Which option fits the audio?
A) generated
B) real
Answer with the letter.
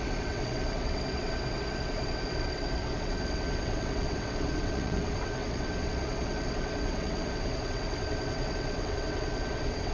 A